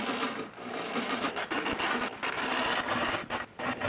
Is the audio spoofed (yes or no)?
no